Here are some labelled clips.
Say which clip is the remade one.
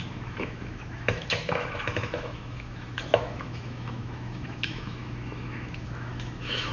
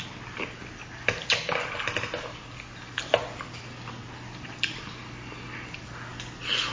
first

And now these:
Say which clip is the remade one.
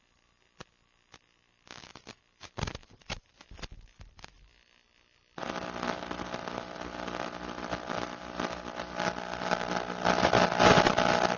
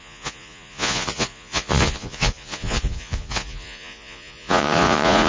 second